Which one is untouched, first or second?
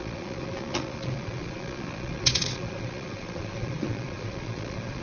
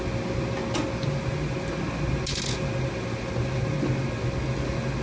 second